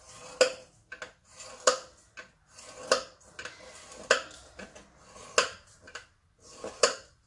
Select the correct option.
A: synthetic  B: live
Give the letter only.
B